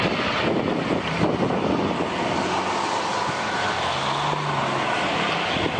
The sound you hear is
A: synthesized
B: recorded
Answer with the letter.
B